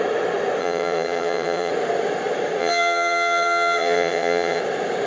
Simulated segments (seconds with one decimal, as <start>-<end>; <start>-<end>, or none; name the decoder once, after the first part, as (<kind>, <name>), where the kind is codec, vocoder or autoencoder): 0.6-1.7 (vocoder, HiFi-GAN); 2.6-4.6